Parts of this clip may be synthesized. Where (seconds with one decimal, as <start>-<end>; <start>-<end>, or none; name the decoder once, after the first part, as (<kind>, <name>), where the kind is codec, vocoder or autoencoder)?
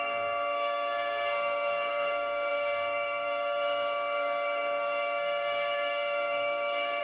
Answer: 0.0-7.0 (codec, SNAC)